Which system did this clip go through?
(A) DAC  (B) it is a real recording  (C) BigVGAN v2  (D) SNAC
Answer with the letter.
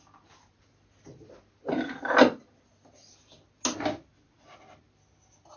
B